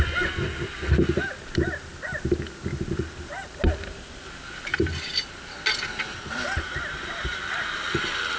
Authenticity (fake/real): real